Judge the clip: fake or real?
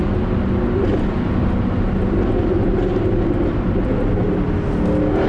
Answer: real